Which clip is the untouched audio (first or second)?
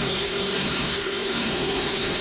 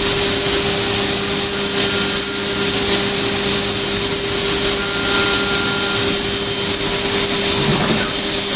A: second